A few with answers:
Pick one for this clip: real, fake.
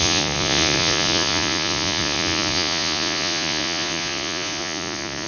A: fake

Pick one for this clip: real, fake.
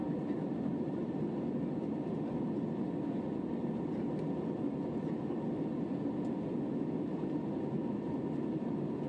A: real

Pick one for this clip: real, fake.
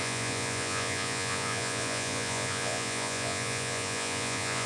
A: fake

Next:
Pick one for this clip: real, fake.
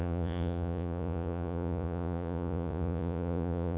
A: fake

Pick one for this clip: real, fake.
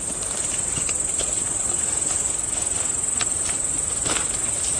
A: real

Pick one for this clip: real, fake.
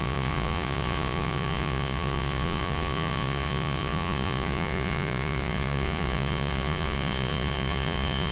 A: fake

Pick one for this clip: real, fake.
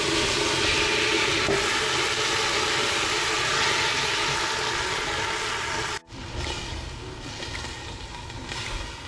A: real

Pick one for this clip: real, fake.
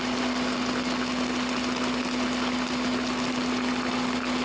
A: real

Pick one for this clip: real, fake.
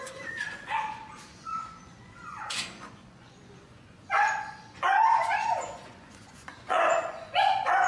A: fake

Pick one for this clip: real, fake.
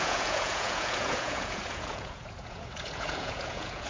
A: fake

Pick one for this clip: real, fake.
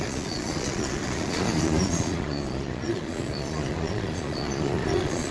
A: fake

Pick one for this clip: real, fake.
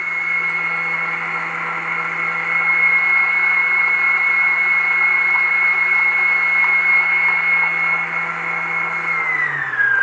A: real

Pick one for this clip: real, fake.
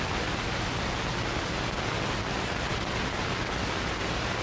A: real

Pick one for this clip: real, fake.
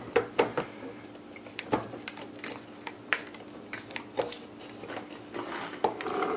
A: real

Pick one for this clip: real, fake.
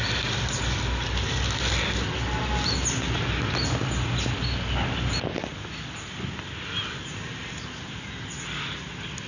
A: real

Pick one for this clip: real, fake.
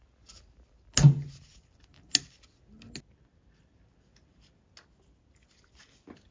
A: real